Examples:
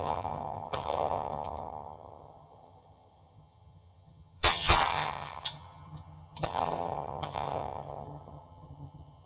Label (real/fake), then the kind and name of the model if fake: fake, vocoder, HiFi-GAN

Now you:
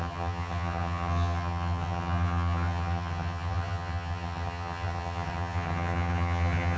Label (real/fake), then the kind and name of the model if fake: fake, vocoder, HiFi-GAN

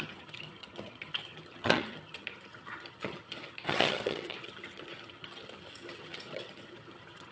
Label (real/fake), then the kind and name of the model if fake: fake, vocoder, HiFi-GAN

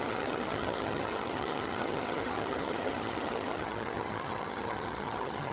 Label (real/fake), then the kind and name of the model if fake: fake, vocoder, HiFi-GAN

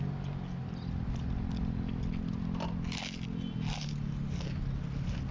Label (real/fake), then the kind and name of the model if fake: real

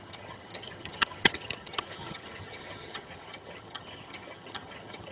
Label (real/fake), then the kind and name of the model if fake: fake, vocoder, HiFi-GAN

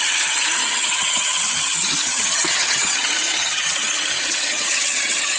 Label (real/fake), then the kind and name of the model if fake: fake, vocoder, HiFi-GAN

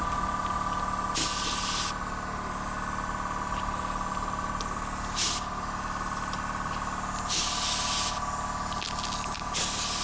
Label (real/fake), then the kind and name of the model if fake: real